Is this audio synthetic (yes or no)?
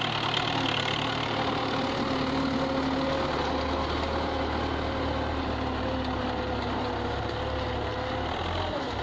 no